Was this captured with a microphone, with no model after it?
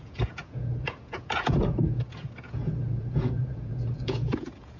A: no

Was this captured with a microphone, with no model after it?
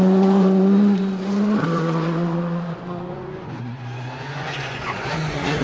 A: no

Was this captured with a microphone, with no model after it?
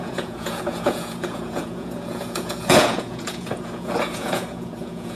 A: no